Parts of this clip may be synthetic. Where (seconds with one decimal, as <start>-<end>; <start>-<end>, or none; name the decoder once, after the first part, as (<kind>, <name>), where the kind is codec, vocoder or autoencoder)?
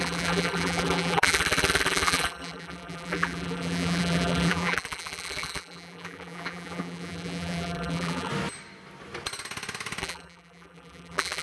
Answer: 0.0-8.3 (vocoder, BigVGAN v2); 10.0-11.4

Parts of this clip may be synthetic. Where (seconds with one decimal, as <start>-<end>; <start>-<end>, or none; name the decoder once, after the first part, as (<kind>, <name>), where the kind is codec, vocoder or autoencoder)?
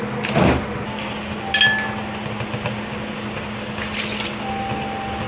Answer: none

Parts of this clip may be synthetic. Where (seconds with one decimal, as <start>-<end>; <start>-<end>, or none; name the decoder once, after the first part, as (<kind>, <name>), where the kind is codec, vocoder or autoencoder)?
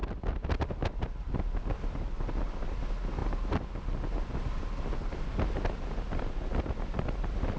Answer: none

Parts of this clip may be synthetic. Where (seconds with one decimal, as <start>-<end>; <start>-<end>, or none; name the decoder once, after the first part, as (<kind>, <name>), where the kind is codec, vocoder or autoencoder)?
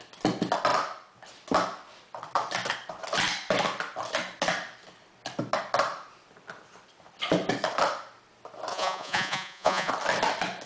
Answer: 8.7-9.9 (vocoder, Vocos)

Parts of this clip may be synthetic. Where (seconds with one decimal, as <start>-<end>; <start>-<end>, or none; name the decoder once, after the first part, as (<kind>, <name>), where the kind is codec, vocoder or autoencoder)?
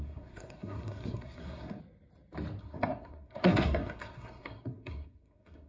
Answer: 0.0-1.8 (codec, SNAC); 2.6-5.7